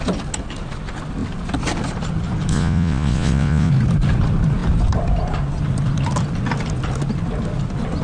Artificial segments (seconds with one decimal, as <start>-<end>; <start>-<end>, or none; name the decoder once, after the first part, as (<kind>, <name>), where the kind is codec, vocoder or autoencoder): 2.5-3.7 (vocoder, Vocos)